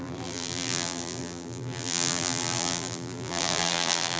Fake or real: fake